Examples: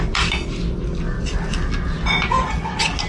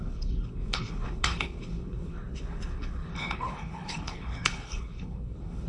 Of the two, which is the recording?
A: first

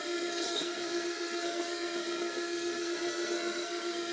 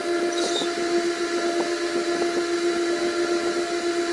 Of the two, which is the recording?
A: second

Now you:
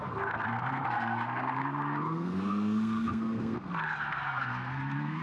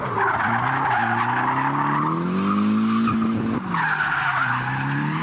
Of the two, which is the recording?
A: second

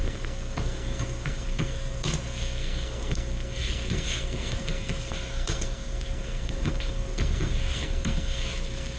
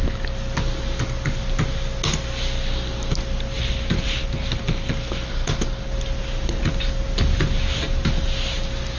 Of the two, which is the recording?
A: second